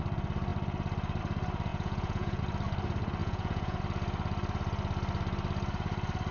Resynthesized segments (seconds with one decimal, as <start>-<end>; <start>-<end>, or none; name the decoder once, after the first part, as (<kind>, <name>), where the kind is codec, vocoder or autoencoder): 1.7-2.4 (vocoder, Vocos); 3.2-3.8